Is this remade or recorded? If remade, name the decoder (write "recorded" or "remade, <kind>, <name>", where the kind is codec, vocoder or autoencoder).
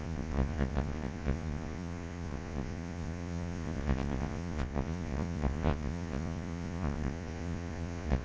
remade, vocoder, Vocos